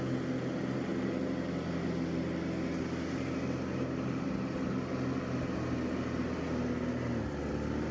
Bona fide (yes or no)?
yes